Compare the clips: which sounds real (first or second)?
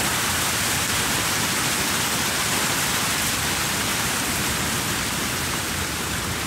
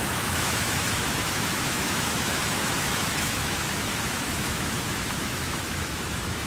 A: first